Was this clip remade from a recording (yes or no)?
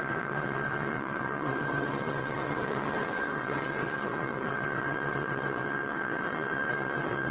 yes